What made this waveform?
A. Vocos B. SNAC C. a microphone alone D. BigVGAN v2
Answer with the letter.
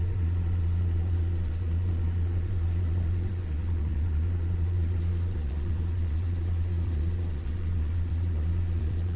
A